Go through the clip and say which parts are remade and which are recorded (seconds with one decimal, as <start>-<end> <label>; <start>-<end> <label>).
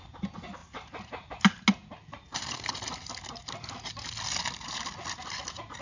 0.0-0.6 recorded; 0.6-1.4 remade; 1.4-5.8 recorded